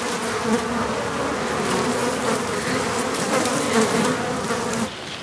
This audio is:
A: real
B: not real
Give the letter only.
A